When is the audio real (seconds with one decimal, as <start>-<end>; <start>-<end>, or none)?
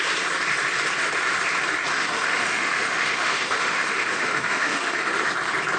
0.0-1.9; 5.3-5.8